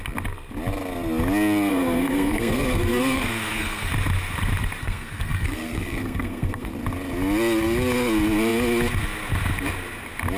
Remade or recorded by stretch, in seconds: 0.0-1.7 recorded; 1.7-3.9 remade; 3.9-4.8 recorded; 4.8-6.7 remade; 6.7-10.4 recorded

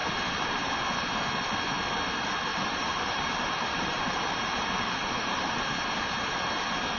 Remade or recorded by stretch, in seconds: 0.0-0.7 remade; 0.7-2.5 recorded; 2.5-5.6 remade; 5.6-7.0 recorded

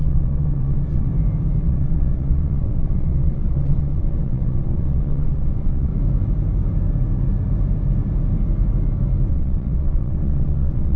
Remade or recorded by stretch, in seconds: 0.0-1.1 remade; 1.1-1.6 recorded; 1.6-5.9 remade; 5.9-9.3 recorded; 9.3-11.0 remade

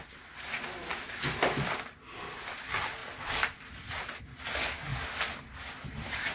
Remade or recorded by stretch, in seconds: 0.0-6.3 recorded

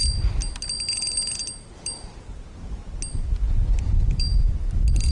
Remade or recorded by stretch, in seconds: 0.0-1.4 recorded; 1.4-2.4 remade; 2.4-3.4 recorded; 3.4-4.5 remade; 4.5-5.1 recorded